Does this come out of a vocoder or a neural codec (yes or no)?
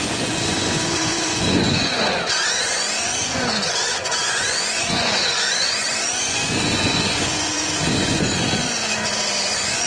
yes